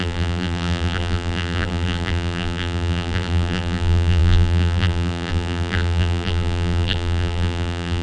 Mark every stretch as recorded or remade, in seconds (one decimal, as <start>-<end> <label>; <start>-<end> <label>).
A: 0.0-8.0 remade